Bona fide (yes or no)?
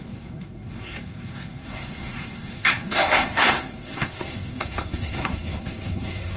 no